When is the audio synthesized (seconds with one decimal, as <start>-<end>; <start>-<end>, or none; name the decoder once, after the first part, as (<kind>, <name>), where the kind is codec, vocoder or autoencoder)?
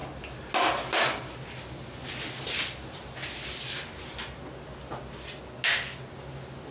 none